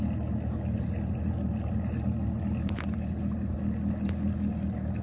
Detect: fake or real real